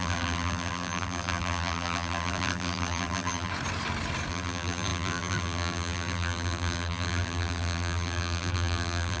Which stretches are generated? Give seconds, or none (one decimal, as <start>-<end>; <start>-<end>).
0.0-3.5; 4.3-9.2

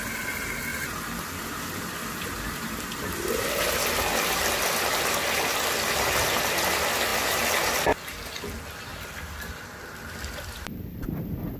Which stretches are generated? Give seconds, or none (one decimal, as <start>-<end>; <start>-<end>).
0.7-3.7; 8.9-11.2

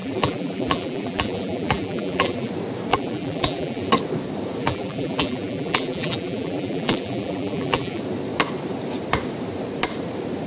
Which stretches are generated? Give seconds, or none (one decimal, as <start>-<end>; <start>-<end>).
0.0-2.5; 2.9-3.9; 4.6-8.0

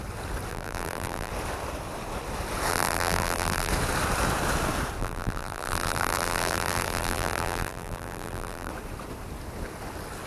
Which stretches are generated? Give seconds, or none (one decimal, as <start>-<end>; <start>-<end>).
0.5-1.3; 2.7-3.7; 5.0-8.7

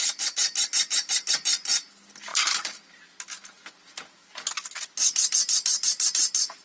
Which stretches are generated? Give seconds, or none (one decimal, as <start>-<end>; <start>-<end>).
2.3-2.8

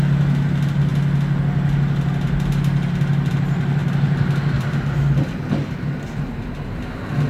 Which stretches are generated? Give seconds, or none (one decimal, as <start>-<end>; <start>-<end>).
none

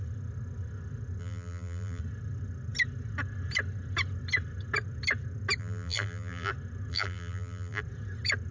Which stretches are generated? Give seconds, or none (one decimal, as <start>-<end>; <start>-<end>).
1.2-2.0; 5.6-6.5; 6.9-7.8